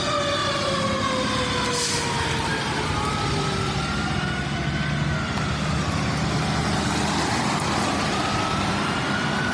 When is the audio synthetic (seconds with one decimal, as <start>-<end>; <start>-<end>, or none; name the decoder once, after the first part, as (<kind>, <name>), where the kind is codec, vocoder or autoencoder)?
0.4-1.0 (vocoder, BigVGAN v2)